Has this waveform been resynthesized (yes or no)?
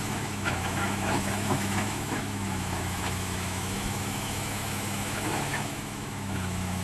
yes